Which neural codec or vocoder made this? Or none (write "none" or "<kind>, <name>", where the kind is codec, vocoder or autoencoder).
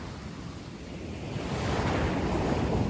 none